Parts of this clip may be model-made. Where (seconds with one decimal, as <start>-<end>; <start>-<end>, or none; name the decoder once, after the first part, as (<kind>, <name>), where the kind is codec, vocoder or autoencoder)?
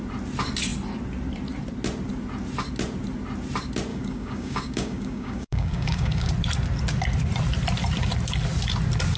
3.9-6.3 (codec, DAC)